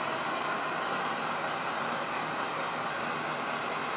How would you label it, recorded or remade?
recorded